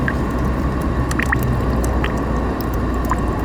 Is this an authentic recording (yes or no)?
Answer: yes